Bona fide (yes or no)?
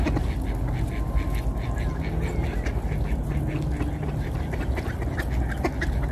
yes